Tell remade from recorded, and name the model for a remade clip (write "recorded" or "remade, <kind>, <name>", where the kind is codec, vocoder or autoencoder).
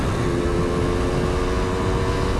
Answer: recorded